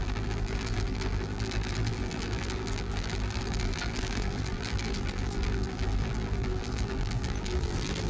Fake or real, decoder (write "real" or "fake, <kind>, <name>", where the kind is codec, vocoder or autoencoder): fake, vocoder, BigVGAN v2